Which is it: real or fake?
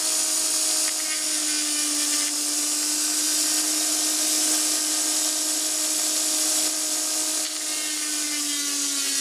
real